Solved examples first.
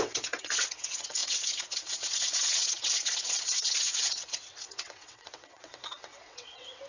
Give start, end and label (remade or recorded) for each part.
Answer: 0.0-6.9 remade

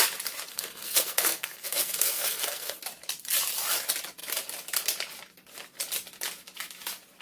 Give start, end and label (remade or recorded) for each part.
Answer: 0.0-0.5 recorded; 0.5-2.8 remade; 2.8-7.2 recorded

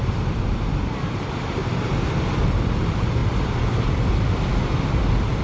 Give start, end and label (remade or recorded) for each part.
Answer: 0.0-5.4 recorded

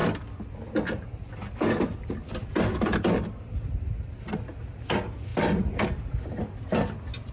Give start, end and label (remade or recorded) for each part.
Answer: 0.0-7.3 recorded

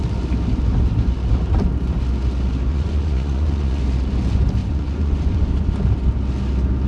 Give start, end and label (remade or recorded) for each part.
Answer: 0.0-2.7 recorded; 2.7-3.8 remade; 3.8-4.6 recorded; 4.6-5.7 remade; 5.7-6.9 recorded

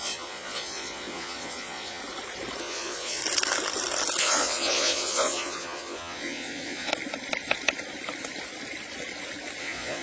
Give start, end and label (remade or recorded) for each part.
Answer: 0.0-2.0 remade; 2.0-2.6 recorded; 2.6-3.2 remade; 3.2-4.2 recorded; 4.2-6.9 remade; 6.9-9.6 recorded; 9.6-10.0 remade

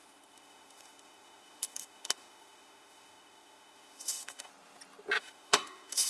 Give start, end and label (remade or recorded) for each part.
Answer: 0.0-4.5 remade; 4.5-5.2 recorded; 5.2-6.1 remade